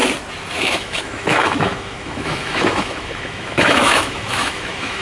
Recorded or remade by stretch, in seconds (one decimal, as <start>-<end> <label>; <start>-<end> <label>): 0.0-0.5 recorded; 0.5-5.0 remade